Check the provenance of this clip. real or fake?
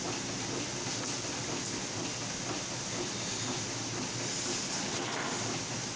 real